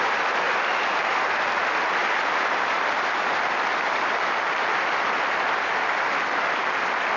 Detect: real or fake real